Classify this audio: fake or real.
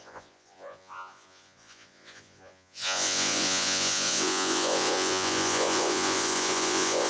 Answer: fake